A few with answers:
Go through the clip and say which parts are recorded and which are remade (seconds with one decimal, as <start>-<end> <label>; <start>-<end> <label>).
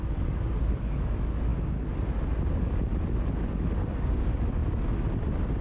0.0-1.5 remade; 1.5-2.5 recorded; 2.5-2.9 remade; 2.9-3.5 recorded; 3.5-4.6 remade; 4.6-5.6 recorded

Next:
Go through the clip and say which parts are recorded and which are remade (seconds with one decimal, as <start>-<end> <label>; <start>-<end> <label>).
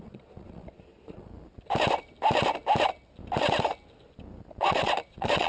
0.0-1.3 remade; 1.3-4.6 recorded; 4.6-5.5 remade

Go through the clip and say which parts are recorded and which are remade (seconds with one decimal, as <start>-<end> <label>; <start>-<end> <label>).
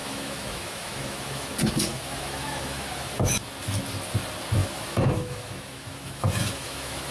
0.0-1.5 remade; 1.5-1.9 recorded; 1.9-3.4 remade; 3.4-4.6 recorded; 4.6-7.1 remade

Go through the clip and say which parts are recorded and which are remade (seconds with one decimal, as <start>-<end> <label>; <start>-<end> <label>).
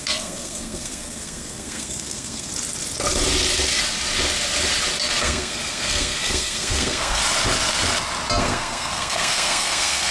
0.0-2.5 remade; 2.5-5.2 recorded; 5.2-7.2 remade; 7.2-8.4 recorded; 8.4-10.1 remade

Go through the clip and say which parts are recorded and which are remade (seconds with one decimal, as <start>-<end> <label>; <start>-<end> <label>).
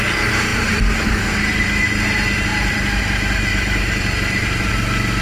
0.0-0.5 recorded; 0.5-1.6 remade; 1.6-3.5 recorded; 3.5-4.7 remade; 4.7-5.2 recorded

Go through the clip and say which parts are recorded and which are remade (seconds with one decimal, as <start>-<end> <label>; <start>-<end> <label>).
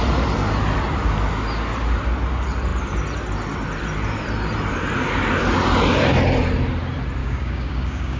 0.0-7.2 recorded; 7.2-8.2 remade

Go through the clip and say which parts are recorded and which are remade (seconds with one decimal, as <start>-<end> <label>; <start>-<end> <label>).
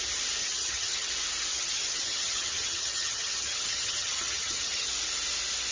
0.0-0.4 recorded; 0.4-1.1 remade; 1.1-1.5 recorded; 1.5-4.9 remade; 4.9-5.7 recorded